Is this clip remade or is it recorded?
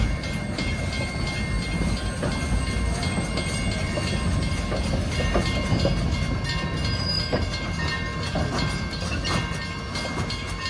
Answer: recorded